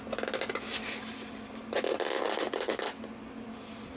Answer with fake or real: real